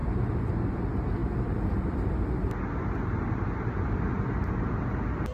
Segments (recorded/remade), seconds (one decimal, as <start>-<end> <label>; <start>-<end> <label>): 0.0-5.3 recorded